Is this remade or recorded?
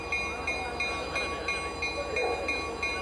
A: recorded